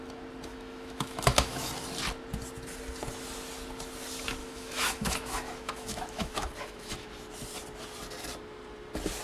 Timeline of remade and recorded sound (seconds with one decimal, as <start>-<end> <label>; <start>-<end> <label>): 0.0-0.5 recorded; 0.5-1.7 remade; 1.7-4.4 recorded; 4.4-7.1 remade; 7.1-9.2 recorded